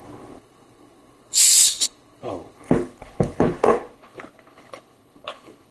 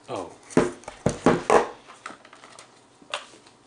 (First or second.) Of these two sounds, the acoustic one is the second